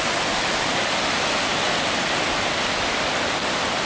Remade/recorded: recorded